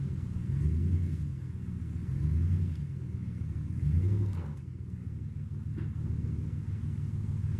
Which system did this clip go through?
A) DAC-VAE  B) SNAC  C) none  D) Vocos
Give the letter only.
B